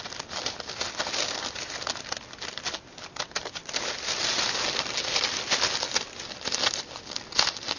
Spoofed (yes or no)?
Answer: no